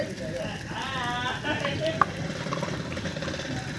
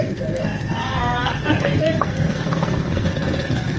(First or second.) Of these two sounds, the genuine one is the first